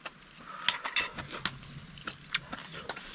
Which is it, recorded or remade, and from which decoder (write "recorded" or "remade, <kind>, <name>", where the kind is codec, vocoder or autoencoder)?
recorded